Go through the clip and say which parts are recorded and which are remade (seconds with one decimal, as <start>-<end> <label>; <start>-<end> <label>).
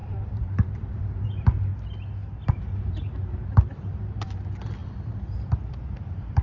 0.0-1.7 remade; 1.7-2.5 recorded; 2.5-6.4 remade